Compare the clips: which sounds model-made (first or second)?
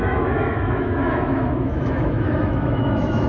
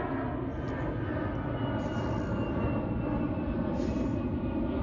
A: first